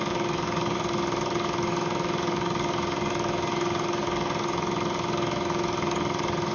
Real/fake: fake